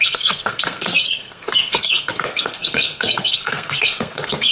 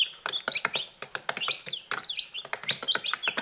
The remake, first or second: first